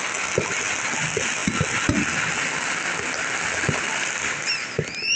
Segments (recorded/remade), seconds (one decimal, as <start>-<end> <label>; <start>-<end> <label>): 0.0-5.2 recorded